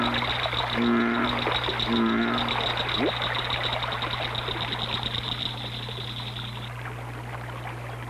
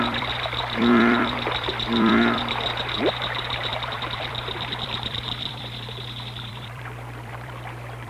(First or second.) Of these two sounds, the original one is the first